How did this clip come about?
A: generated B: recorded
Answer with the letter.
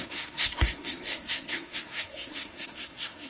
A